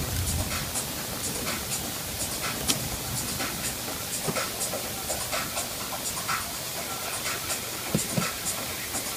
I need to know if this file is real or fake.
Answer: real